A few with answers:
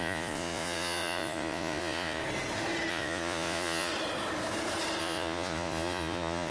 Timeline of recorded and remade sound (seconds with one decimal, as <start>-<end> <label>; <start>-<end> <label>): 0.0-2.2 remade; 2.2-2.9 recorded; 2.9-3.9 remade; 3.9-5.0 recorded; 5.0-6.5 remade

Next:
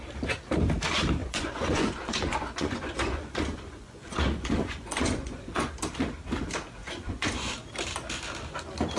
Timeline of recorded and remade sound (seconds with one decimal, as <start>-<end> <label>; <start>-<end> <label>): 0.0-1.2 recorded; 1.2-5.8 remade; 5.8-6.8 recorded; 6.8-7.5 remade; 7.5-9.0 recorded

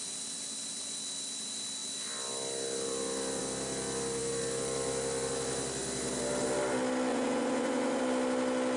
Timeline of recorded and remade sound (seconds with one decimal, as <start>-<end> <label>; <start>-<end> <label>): 0.0-7.1 recorded; 7.1-8.0 remade; 8.0-8.8 recorded

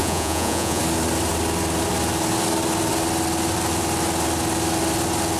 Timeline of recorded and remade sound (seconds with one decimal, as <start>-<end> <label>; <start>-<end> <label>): 0.0-0.8 remade; 0.8-5.4 recorded

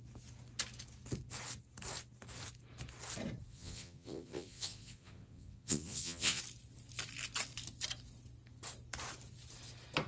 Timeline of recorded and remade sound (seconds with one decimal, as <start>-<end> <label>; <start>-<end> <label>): 0.0-3.5 recorded; 3.5-6.4 remade; 6.4-10.1 recorded

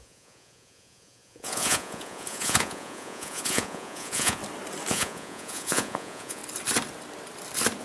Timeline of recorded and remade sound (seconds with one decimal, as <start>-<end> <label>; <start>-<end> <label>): 0.0-4.4 remade; 4.4-4.9 recorded; 4.9-6.4 remade; 6.4-7.8 recorded